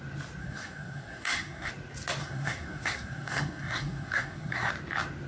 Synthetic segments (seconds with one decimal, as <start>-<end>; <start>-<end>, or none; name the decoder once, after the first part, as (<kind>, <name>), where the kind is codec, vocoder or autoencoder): 0.4-1.7 (codec, SNAC); 2.2-4.7